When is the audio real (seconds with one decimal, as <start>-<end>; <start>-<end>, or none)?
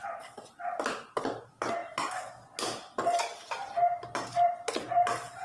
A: 0.0-5.4